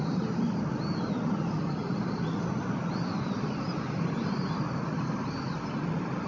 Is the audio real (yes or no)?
yes